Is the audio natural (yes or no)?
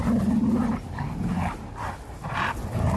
yes